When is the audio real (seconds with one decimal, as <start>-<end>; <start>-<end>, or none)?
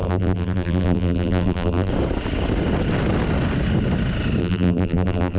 1.9-4.4